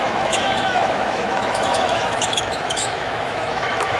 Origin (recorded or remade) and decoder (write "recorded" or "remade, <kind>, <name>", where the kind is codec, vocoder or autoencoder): remade, autoencoder, DAC-VAE